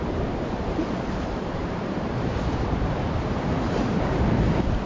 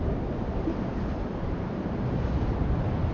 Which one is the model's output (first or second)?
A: first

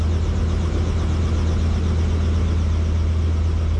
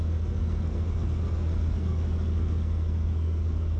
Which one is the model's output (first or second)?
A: second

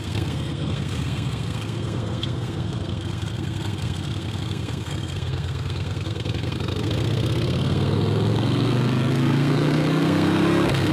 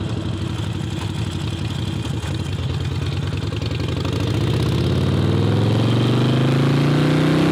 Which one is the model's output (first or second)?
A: first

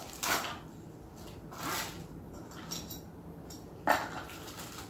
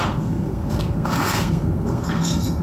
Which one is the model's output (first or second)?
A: second